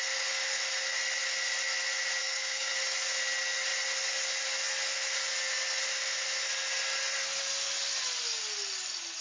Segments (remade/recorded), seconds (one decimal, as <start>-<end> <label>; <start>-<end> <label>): 0.0-2.2 recorded; 2.2-2.7 remade; 2.7-9.2 recorded